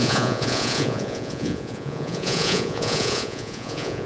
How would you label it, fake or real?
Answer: fake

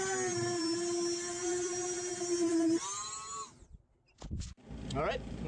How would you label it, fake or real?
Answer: real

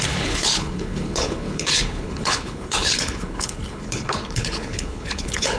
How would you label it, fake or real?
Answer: fake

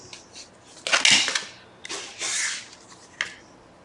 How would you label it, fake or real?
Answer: real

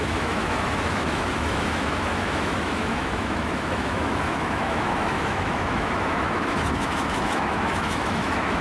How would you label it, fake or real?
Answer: fake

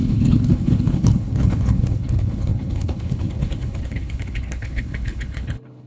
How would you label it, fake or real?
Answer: fake